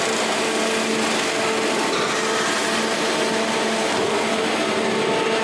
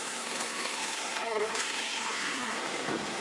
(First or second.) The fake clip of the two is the second